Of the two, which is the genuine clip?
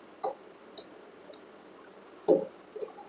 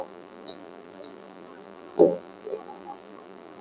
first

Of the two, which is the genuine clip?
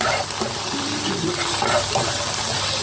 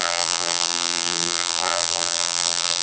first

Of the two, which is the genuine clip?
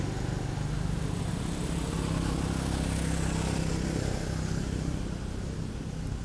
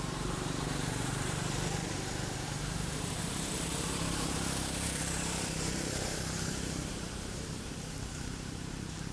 first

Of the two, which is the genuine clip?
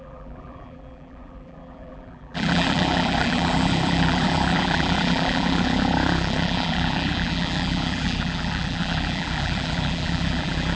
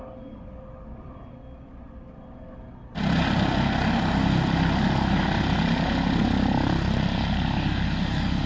second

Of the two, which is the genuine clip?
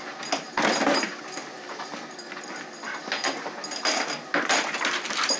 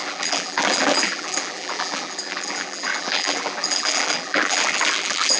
first